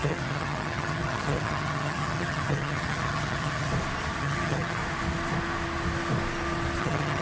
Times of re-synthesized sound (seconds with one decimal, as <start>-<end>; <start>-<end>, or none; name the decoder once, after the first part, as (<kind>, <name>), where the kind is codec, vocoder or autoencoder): 0.0-3.7 (vocoder, HiFi-GAN); 4.2-4.8; 6.8-7.2